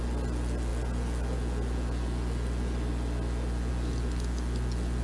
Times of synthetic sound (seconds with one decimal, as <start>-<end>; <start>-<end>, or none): none